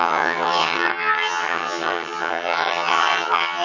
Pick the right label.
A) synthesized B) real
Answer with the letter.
A